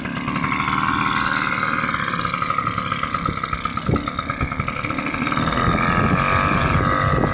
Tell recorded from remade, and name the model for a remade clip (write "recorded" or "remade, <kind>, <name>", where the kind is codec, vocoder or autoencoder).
recorded